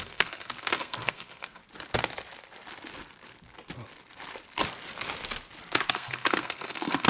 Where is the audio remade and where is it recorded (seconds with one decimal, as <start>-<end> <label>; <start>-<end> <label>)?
0.0-1.6 remade; 1.6-5.9 recorded; 5.9-7.1 remade